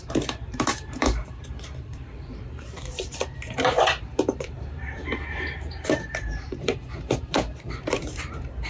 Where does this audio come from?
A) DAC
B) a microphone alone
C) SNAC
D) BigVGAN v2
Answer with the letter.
D